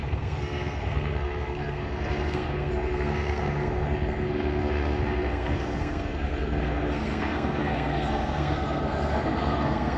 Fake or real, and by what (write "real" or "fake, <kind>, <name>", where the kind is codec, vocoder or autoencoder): fake, codec, SNAC